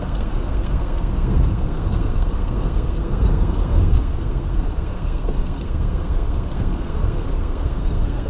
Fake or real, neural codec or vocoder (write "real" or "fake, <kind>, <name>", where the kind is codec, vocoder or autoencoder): fake, codec, SNAC